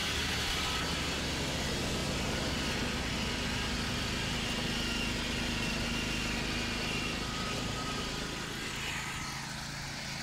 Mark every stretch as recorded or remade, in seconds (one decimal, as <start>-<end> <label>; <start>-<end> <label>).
0.0-0.8 remade; 0.8-10.2 recorded